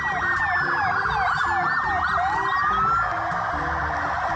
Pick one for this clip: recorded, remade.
recorded